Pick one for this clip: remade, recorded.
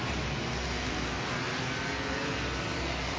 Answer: recorded